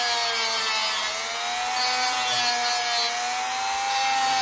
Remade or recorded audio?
recorded